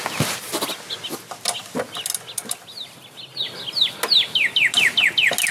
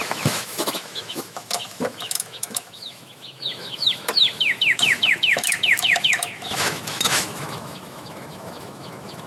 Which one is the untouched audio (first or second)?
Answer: first